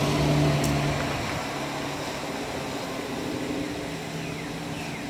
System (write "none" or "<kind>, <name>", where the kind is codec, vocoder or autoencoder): none